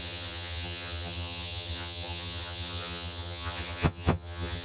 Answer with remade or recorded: remade